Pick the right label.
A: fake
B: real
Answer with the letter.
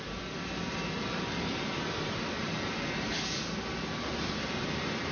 A